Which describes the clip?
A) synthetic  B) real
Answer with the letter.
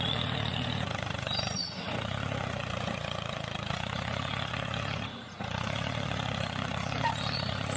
A